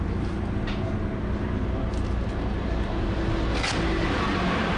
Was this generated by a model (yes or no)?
no